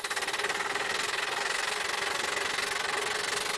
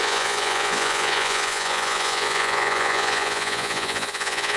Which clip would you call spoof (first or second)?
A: second